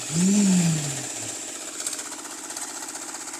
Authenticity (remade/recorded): recorded